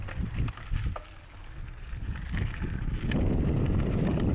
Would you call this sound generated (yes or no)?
no